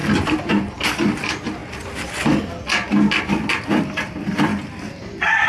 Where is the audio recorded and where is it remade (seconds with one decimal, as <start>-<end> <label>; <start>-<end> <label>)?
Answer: 0.0-0.5 recorded; 0.5-1.6 remade; 1.6-3.2 recorded; 3.2-5.5 remade